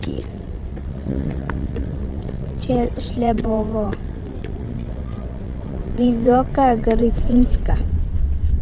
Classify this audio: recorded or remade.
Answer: remade